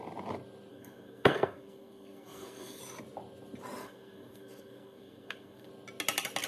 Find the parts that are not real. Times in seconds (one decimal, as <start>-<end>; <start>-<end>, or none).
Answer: 0.7-2.8; 3.8-5.7